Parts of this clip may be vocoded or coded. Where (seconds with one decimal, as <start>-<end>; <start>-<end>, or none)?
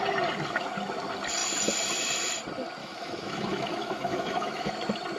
2.8-4.7